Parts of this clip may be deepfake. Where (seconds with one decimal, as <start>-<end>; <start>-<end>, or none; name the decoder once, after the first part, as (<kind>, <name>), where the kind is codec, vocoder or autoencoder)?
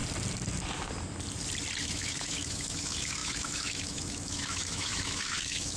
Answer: 1.8-5.8 (autoencoder, DAC-VAE)